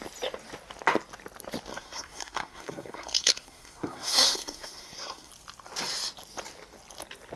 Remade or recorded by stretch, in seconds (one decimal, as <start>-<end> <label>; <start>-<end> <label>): 0.0-1.7 recorded; 1.7-5.3 remade; 5.3-7.4 recorded